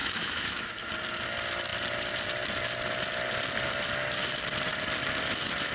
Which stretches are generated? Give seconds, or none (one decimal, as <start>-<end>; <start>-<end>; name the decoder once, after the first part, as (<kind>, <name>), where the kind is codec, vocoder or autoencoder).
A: 0.0-0.9 (autoencoder, DAC-VAE)